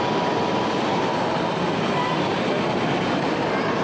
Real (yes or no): yes